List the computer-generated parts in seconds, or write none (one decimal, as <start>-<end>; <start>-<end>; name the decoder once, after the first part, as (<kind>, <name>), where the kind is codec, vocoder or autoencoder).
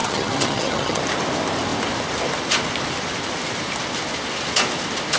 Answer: 0.0-1.0 (vocoder, HiFi-GAN)